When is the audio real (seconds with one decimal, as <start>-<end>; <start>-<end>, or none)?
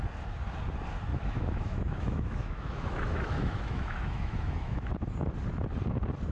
0.0-1.1; 4.9-6.3